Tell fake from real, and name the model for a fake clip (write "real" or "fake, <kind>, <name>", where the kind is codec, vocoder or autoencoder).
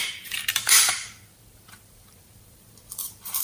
fake, vocoder, BigVGAN v2